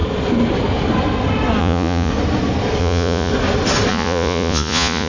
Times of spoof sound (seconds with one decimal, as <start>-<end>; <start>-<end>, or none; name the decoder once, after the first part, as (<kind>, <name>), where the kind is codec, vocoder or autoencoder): 1.6-2.1 (vocoder, Vocos); 2.8-3.3; 3.9-5.1